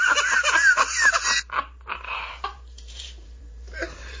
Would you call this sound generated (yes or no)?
yes